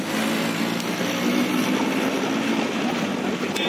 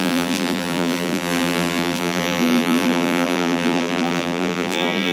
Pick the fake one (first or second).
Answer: second